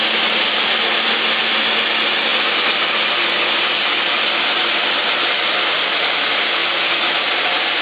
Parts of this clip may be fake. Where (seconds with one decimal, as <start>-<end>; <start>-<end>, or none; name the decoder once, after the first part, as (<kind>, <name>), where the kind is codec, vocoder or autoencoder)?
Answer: none